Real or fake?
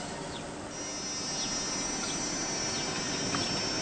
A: real